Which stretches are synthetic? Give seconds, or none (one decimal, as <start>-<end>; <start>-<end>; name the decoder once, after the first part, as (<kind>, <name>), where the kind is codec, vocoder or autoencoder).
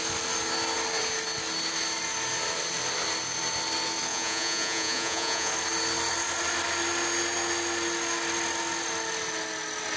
4.1-5.5 (vocoder, Vocos)